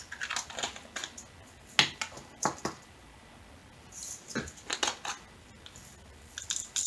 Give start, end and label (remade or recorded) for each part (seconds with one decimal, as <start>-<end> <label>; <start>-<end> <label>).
0.0-6.9 recorded